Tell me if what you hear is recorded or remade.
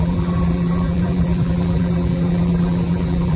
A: remade